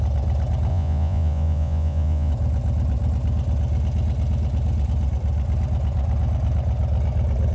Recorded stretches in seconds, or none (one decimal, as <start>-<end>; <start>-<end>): 0.0-0.7; 2.3-7.5